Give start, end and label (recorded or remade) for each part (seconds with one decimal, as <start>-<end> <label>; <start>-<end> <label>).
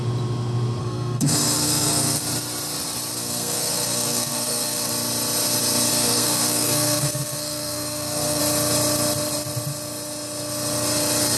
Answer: 0.0-0.8 recorded; 0.8-2.2 remade; 2.2-3.1 recorded; 3.1-4.9 remade; 4.9-5.9 recorded; 5.9-8.4 remade; 8.4-11.4 recorded